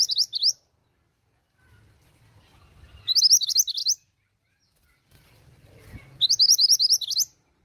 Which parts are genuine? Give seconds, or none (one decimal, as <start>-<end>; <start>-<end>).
0.0-7.6